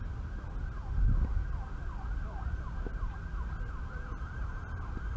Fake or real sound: real